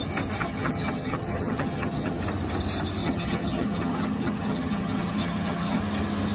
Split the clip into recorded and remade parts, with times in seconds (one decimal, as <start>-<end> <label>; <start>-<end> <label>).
0.0-0.4 recorded; 0.4-2.2 remade; 2.2-3.0 recorded; 3.0-5.8 remade; 5.8-6.3 recorded